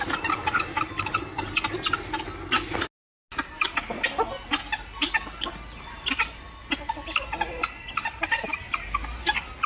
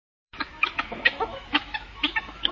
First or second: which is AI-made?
second